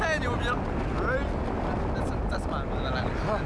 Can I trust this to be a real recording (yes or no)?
yes